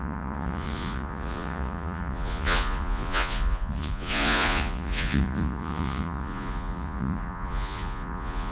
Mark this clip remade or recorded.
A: remade